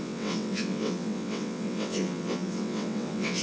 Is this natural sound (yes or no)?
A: no